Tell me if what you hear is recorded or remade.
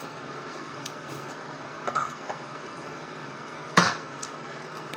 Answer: remade